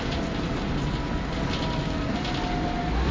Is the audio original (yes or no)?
yes